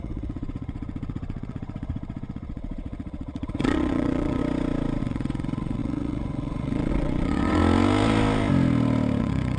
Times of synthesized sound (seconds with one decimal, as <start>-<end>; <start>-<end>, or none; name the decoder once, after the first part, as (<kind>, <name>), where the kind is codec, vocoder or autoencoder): 0.0-4.4 (vocoder, WaveNeXt); 5.0-7.6; 9.2-9.6